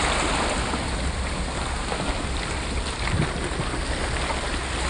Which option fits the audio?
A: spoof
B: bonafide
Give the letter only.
B